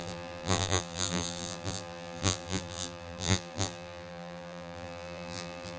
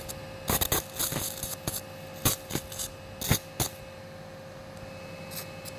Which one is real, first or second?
second